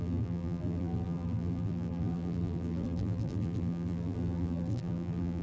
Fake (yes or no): yes